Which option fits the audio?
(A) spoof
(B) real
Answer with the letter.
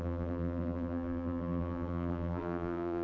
A